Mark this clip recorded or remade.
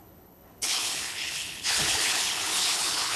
remade